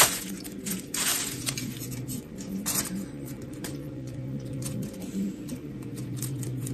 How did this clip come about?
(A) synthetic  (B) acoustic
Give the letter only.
A